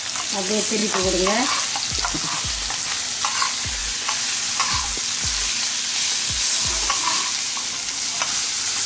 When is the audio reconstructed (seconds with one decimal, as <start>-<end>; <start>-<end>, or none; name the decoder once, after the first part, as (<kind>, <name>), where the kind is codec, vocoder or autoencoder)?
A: 3.8-4.9 (vocoder, Vocos)